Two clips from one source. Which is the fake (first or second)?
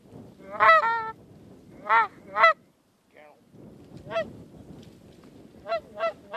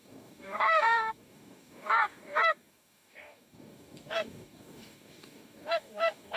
second